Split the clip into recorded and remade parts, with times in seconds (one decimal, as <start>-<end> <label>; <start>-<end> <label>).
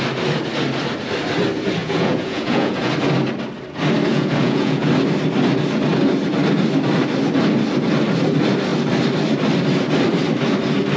0.0-1.8 recorded; 1.8-2.9 remade; 2.9-4.1 recorded; 4.1-4.9 remade; 4.9-11.0 recorded